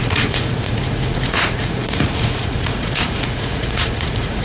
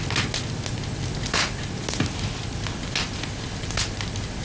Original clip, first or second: second